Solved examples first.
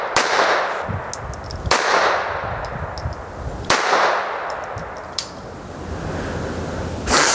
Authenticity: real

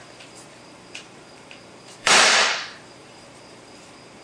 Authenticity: fake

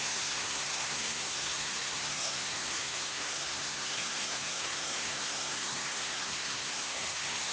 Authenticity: fake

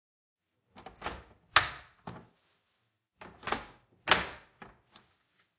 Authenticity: real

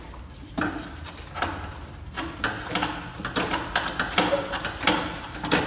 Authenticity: real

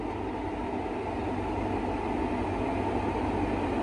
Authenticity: real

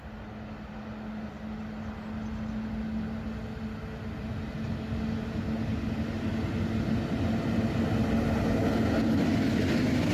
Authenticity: real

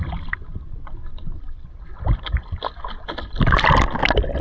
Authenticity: real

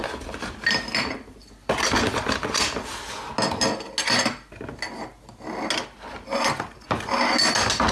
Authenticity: real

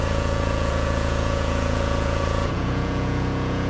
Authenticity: fake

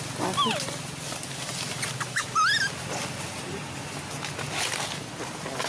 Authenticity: real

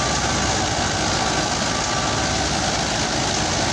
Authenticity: real